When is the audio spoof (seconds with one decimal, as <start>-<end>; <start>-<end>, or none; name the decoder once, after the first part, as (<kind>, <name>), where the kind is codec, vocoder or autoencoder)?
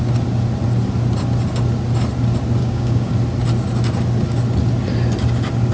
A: 2.6-3.1 (codec, DAC)